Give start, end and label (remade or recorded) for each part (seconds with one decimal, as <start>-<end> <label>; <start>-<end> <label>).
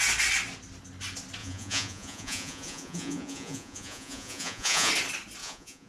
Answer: 0.0-1.4 recorded; 1.4-4.9 remade; 4.9-5.4 recorded; 5.4-5.9 remade